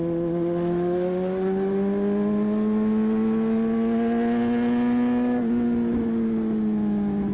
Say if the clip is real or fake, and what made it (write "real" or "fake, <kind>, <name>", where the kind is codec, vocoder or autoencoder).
real